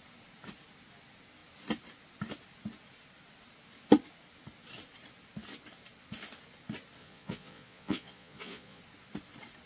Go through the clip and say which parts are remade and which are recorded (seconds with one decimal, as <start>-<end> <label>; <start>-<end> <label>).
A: 0.0-7.0 recorded; 7.0-8.8 remade; 8.8-9.7 recorded